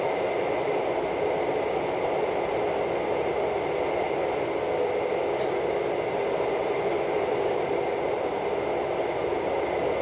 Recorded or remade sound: recorded